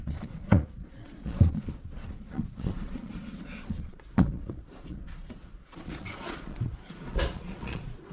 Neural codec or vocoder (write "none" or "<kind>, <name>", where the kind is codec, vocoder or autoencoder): vocoder, Vocos